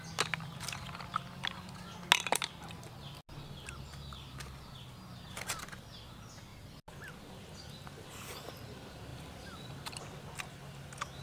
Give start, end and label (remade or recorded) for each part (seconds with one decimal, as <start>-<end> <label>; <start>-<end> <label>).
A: 0.0-9.1 recorded; 9.1-10.0 remade; 10.0-11.2 recorded